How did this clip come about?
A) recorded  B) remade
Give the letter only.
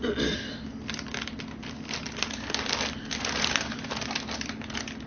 A